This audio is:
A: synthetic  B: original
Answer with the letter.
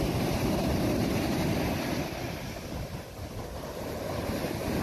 A